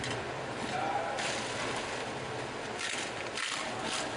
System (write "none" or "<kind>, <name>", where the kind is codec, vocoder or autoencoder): none